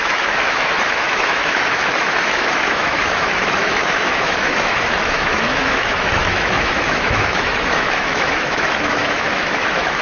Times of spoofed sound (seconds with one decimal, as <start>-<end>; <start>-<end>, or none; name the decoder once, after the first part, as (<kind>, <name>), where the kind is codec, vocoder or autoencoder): 0.0-10.0 (autoencoder, DAC-VAE)